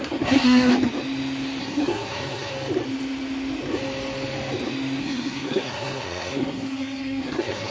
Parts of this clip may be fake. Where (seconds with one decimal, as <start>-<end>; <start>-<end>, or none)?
0.0-0.7; 1.6-2.5; 5.0-7.7